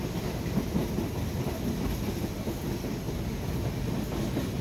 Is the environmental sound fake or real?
real